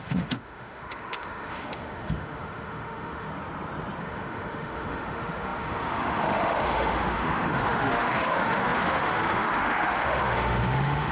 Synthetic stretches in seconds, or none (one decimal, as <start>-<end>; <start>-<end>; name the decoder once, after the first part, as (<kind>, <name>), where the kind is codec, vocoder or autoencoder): 0.0-3.3 (autoencoder, DAC-VAE); 4.0-11.1